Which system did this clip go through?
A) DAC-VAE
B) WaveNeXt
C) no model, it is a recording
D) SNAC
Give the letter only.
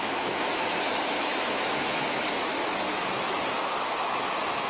A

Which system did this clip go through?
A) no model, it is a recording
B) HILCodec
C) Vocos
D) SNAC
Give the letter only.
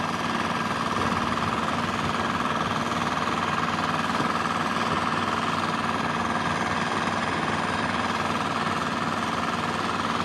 A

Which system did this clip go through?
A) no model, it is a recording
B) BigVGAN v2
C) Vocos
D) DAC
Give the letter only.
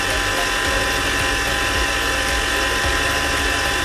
A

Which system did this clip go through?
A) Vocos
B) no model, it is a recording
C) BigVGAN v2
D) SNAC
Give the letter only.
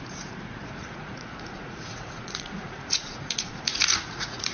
A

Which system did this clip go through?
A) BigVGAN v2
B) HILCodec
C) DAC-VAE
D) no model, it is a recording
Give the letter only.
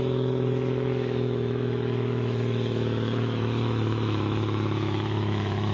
C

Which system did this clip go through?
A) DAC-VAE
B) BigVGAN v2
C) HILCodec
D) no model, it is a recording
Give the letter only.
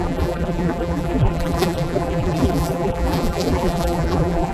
B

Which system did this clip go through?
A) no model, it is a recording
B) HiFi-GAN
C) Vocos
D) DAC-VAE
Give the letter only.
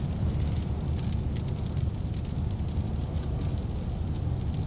A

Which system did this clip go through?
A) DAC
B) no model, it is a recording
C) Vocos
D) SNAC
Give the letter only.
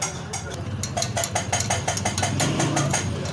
B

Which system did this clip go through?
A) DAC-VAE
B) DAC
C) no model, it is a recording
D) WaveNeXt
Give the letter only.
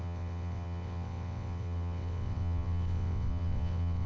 D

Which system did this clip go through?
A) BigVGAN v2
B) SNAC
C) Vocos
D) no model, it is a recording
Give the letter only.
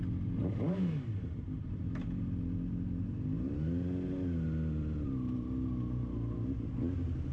D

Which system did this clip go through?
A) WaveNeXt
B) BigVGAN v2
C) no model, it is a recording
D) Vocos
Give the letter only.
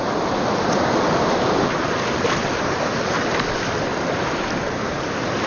C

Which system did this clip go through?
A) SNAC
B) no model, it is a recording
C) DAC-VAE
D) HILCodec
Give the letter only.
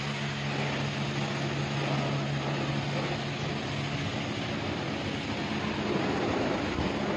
B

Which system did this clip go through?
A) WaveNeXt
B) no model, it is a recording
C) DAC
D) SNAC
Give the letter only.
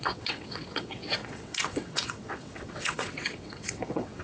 A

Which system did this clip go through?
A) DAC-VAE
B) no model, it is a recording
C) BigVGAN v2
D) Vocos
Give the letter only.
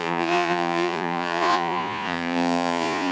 D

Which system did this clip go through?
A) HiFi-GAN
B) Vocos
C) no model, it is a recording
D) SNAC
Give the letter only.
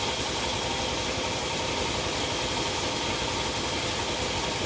C